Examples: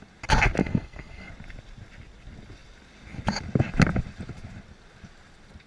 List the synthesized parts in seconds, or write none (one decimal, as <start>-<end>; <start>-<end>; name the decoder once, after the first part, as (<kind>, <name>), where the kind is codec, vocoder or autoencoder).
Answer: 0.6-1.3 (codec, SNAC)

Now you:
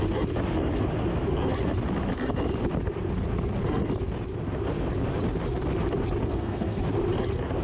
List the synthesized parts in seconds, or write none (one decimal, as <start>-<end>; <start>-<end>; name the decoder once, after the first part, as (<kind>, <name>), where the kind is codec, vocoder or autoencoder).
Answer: 6.2-6.8 (codec, SNAC)

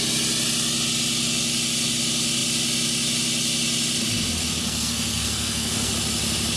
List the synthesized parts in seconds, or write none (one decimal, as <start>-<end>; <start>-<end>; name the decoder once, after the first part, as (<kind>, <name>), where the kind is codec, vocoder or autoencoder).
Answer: 4.6-5.9 (codec, SNAC)

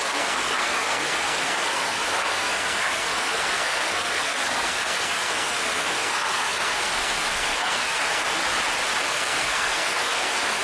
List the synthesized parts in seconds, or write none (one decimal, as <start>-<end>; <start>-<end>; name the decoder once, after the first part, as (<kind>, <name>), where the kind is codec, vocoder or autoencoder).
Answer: 0.0-8.4 (codec, SNAC); 9.0-10.6